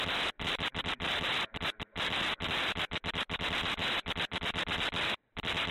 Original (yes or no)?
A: no